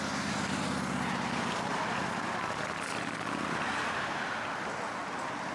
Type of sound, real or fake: real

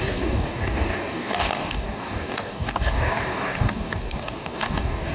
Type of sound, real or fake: fake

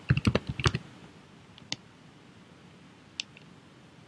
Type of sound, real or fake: real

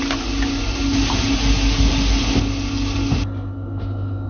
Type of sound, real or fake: real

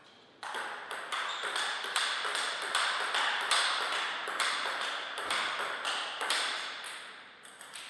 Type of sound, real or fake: fake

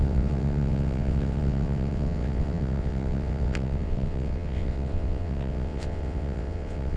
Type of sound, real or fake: fake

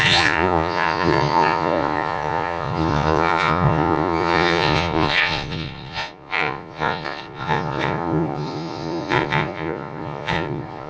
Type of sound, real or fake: fake